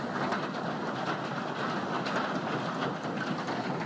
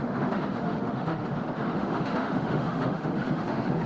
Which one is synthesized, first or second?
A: second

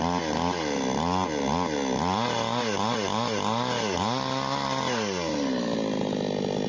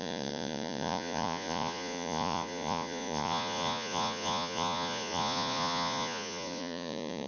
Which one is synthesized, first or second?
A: second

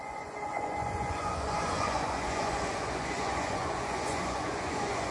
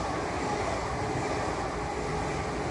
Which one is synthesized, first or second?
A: first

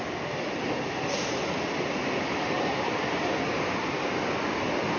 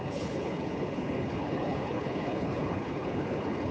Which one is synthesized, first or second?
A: second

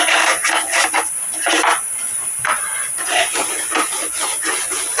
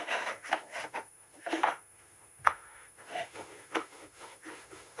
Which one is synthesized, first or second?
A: second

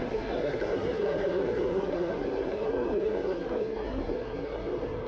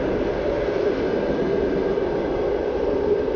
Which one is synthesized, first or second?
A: first